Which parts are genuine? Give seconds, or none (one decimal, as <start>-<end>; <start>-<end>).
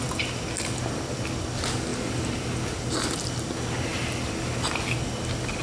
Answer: 0.0-5.6